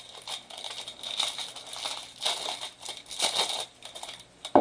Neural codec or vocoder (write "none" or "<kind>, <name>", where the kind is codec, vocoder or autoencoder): none